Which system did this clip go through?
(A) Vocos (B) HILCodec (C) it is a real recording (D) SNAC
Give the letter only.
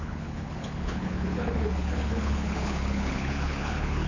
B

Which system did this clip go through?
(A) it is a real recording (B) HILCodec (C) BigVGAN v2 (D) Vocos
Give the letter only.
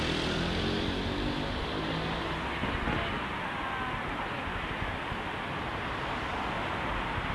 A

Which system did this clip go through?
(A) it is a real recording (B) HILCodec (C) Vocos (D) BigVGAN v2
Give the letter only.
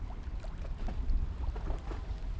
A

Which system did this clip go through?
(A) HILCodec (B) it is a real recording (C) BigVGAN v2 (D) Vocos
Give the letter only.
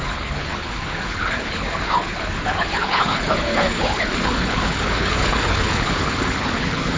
A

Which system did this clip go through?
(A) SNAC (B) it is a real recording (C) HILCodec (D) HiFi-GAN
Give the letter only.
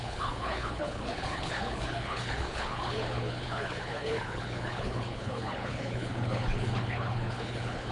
C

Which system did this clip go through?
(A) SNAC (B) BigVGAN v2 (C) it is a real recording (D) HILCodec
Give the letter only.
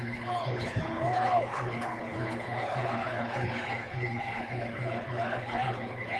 D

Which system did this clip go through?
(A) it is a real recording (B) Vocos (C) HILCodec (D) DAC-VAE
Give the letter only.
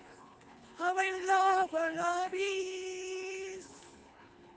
C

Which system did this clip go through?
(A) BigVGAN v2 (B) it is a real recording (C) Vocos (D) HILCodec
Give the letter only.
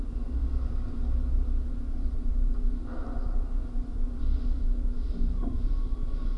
B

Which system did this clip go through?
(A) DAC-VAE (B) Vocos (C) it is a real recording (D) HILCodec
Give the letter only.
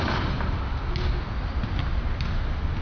C